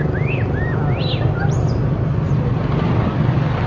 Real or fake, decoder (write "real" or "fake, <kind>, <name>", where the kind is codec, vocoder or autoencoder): real